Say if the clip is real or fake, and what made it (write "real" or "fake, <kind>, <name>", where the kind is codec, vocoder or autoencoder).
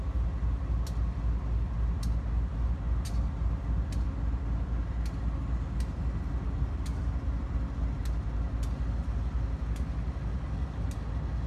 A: real